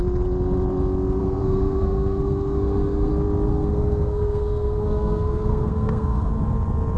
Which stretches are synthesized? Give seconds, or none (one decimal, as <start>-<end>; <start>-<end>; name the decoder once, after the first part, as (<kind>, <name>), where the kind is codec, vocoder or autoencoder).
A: 1.2-3.1 (codec, SNAC); 3.5-6.3